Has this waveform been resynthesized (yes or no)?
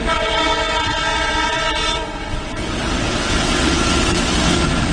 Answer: yes